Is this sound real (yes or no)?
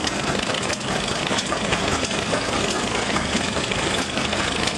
no